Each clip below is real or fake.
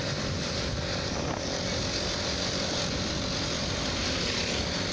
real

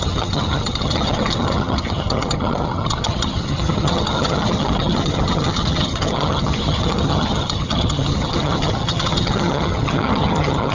fake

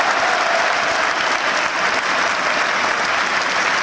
real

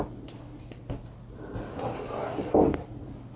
real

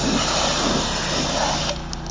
real